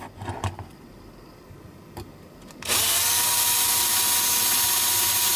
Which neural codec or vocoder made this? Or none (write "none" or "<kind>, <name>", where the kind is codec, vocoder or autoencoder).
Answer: none